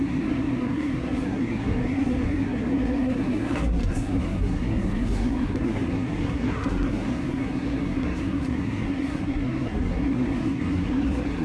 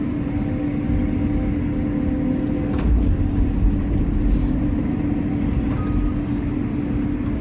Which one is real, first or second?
second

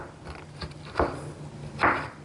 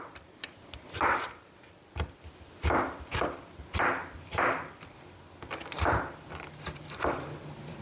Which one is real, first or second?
first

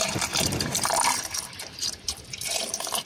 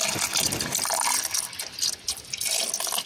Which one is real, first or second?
second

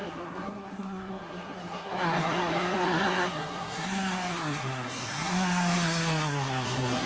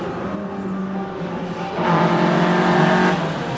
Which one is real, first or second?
second